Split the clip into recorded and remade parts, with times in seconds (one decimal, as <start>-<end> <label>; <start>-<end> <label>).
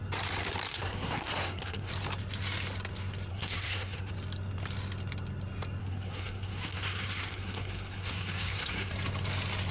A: 0.0-0.7 recorded; 0.7-1.9 remade; 1.9-3.3 recorded; 3.3-4.1 remade; 4.1-5.8 recorded; 5.8-8.9 remade; 8.9-9.7 recorded